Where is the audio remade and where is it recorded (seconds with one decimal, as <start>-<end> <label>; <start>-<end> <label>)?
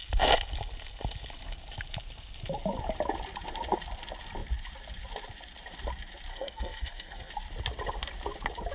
0.0-6.3 recorded; 6.3-7.3 remade; 7.3-8.7 recorded